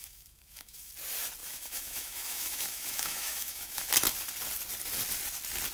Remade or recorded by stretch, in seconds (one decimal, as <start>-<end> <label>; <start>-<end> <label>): 0.0-0.9 remade; 0.9-1.4 recorded; 1.4-3.9 remade; 3.9-5.7 recorded